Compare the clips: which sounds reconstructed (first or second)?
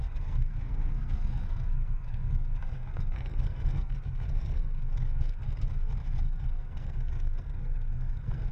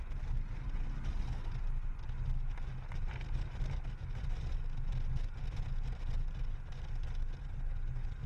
first